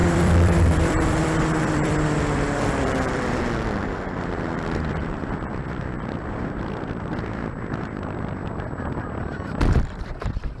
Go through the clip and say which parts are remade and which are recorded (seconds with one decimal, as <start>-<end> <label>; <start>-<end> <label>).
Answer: 0.0-3.4 remade; 3.4-10.6 recorded